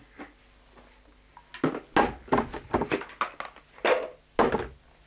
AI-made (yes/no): no